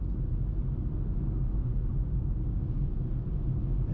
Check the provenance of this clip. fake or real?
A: real